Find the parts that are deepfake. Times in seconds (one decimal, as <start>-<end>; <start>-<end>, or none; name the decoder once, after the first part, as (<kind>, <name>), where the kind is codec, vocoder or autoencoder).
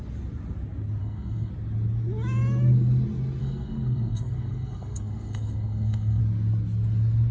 1.0-1.5 (codec, SNAC); 3.4-6.2